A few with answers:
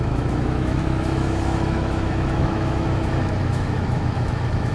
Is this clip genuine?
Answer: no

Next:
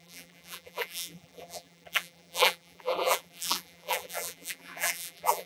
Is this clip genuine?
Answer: no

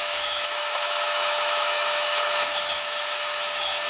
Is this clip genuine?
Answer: no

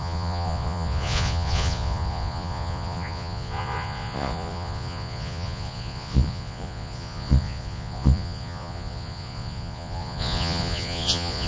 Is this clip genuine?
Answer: no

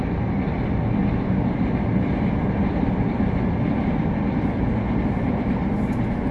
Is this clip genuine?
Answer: yes